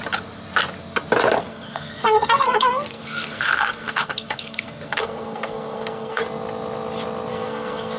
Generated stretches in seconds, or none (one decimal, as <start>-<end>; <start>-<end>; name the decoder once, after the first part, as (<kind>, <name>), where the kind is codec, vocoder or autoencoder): 1.4-6.2 (codec, SNAC); 7.3-8.0